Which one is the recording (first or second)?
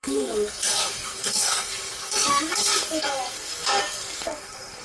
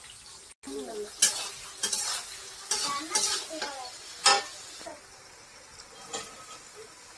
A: second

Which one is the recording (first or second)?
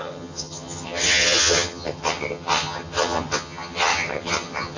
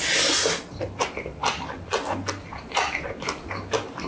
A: second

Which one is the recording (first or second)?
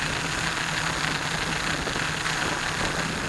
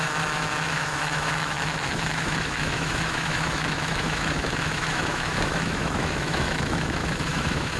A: first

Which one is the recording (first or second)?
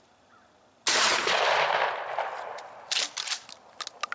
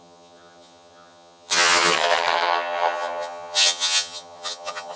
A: first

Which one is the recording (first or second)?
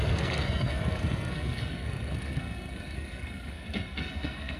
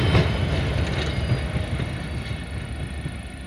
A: second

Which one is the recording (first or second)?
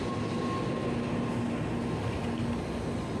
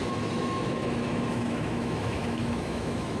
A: first